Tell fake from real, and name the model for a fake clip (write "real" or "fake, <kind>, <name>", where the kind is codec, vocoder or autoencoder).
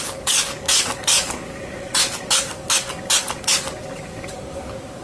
fake, codec, DAC